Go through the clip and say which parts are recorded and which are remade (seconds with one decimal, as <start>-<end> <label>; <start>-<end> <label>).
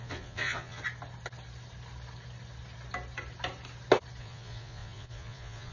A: 0.0-0.8 remade; 0.8-4.2 recorded; 4.2-5.7 remade